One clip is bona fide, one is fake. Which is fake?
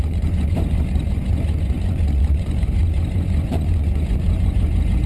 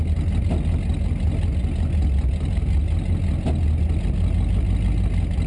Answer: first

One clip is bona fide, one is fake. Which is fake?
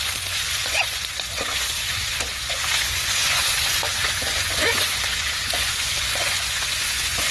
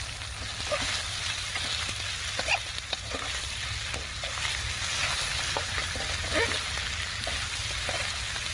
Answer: first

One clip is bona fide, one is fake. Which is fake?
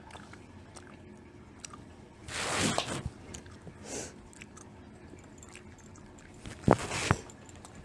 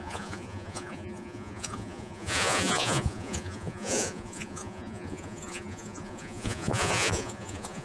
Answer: second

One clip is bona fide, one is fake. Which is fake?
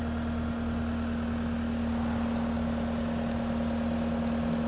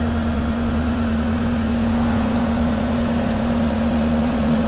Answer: second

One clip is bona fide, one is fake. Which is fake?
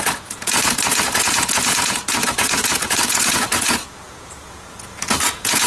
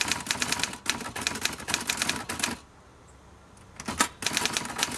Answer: first